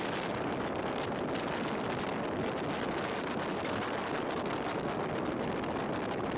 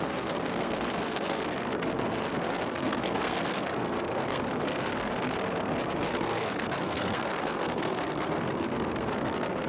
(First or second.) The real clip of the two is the first